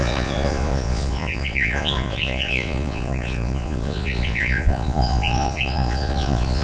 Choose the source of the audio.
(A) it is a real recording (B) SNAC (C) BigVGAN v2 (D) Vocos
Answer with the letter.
D